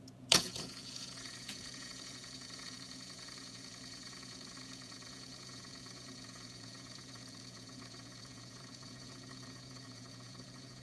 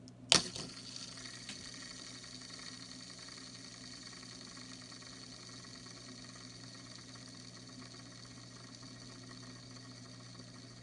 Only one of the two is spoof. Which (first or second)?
first